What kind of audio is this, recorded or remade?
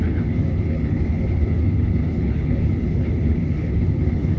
remade